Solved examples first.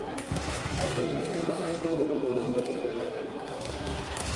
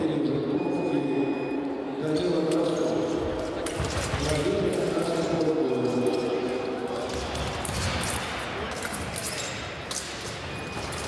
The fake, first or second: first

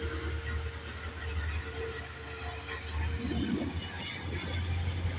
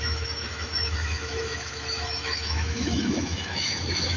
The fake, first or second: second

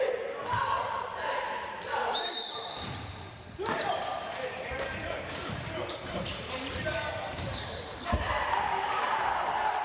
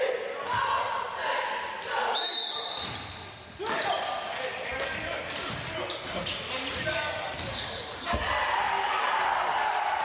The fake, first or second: first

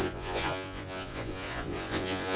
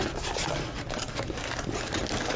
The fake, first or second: first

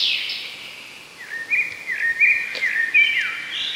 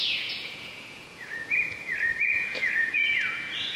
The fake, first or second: second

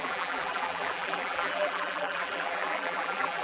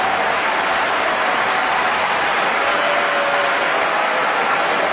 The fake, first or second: first